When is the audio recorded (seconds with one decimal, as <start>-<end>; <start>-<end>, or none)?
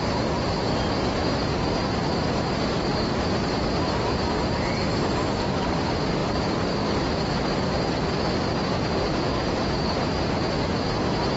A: 0.0-8.7; 10.7-11.4